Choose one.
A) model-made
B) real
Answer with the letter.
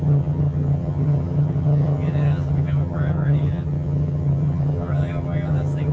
A